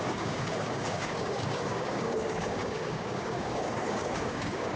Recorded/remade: remade